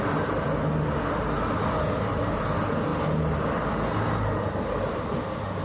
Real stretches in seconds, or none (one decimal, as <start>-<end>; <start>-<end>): 0.0-5.6